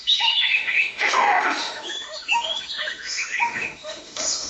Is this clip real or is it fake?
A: fake